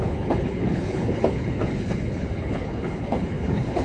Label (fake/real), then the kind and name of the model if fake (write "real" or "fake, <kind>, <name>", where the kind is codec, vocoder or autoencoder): fake, codec, HILCodec